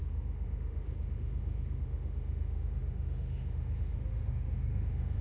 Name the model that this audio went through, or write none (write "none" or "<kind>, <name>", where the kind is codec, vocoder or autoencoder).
autoencoder, DAC-VAE